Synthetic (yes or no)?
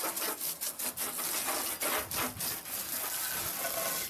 no